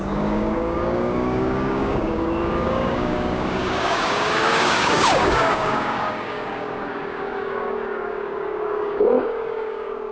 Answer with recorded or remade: remade